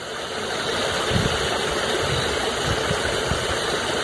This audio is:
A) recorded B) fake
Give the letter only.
A